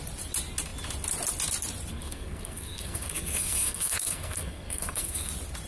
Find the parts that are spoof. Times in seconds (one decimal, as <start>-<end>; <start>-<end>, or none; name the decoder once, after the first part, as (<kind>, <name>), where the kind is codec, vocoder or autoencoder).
1.9-5.3 (codec, SNAC)